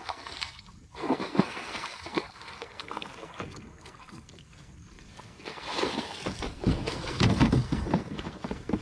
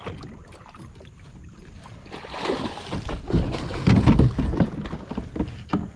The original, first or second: second